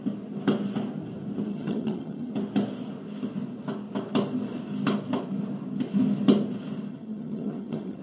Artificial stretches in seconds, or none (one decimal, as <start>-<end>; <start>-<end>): 1.5-2.3; 6.9-8.0